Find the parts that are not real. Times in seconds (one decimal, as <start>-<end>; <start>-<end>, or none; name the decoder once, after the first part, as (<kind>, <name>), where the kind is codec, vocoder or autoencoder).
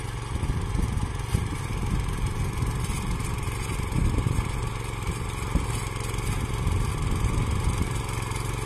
3.7-4.7 (vocoder, BigVGAN v2)